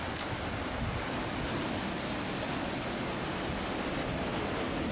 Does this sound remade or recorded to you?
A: recorded